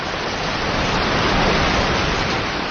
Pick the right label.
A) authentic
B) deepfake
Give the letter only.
B